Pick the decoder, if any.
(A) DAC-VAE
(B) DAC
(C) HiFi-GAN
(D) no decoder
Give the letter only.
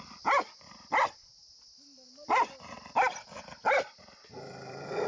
D